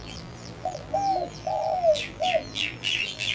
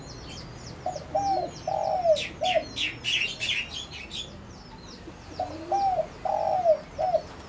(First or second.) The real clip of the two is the second